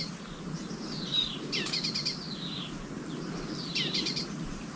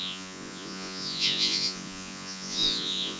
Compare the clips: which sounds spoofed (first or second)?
second